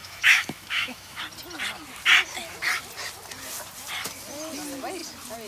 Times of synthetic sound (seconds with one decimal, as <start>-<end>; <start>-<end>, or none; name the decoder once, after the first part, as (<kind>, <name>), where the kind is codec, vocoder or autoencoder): 0.0-1.2 (autoencoder, DAC-VAE)

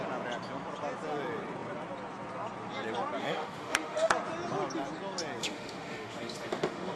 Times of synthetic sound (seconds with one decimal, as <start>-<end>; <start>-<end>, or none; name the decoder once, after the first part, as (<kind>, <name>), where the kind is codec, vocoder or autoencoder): 3.2-4.1 (autoencoder, DAC-VAE); 5.4-7.0

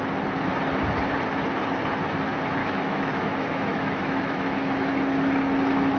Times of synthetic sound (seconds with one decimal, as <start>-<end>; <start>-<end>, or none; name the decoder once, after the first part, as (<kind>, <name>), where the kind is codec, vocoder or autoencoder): 2.6-4.9 (autoencoder, DAC-VAE)

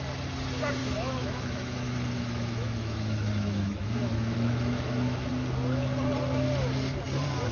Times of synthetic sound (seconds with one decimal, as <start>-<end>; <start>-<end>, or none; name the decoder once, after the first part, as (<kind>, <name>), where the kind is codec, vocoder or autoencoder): 0.8-5.3 (autoencoder, DAC-VAE)

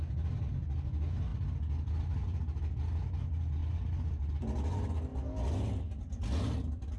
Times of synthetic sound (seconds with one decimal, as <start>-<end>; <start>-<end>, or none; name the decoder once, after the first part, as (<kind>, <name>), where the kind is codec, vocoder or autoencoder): none